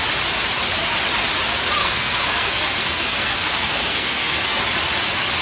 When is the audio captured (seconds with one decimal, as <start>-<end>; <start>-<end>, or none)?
0.0-1.8; 4.6-5.4